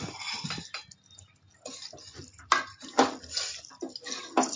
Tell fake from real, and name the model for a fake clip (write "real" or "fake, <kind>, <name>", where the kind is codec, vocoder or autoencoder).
real